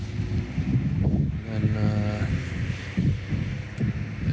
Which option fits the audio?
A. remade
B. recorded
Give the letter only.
B